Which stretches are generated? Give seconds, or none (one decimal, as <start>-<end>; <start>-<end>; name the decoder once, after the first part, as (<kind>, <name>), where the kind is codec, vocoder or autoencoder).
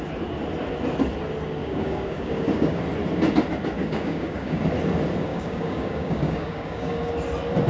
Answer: 1.6-2.8 (codec, DAC); 3.8-4.6; 5.3-7.1